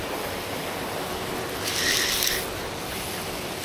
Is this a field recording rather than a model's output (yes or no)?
yes